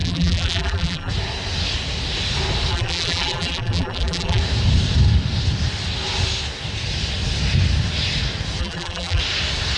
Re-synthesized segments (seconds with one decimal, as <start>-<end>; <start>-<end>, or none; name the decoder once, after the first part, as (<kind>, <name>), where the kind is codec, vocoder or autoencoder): 0.0-1.1 (vocoder, BigVGAN v2); 2.7-4.4; 8.6-9.2